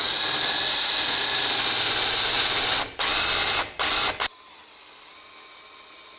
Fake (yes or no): no